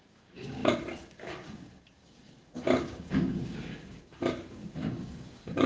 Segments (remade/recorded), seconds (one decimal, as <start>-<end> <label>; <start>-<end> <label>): 0.0-5.7 remade